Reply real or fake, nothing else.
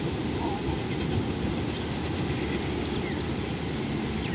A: real